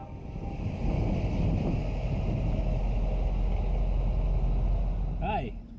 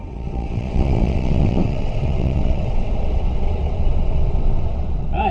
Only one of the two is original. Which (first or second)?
first